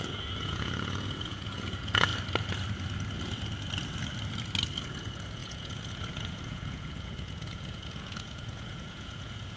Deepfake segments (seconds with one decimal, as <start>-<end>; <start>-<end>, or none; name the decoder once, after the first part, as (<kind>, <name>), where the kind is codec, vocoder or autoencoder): 0.0-2.1 (vocoder, Vocos); 4.8-9.6